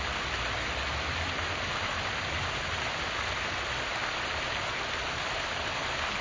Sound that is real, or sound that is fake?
real